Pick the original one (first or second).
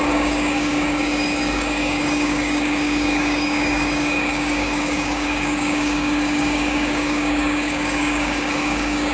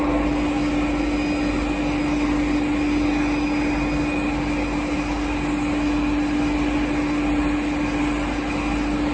second